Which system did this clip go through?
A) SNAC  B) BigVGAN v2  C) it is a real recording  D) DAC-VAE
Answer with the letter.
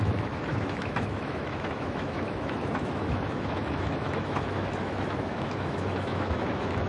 D